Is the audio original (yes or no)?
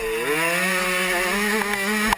yes